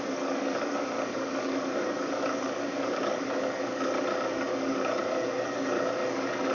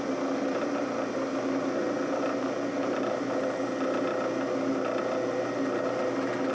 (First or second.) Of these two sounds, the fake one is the first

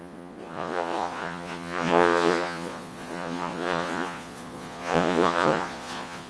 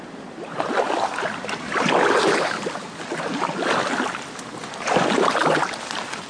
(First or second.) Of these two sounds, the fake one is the first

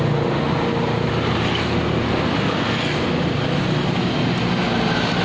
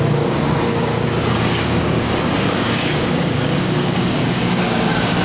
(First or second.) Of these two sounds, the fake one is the second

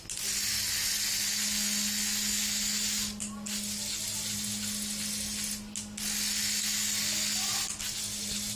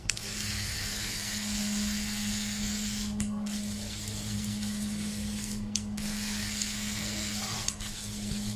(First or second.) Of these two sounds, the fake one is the second